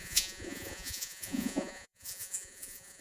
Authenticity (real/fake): fake